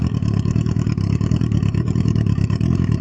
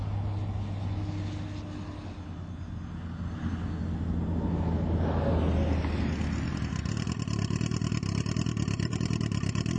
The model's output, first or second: first